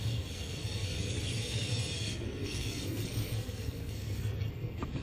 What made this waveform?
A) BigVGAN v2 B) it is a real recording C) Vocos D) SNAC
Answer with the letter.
D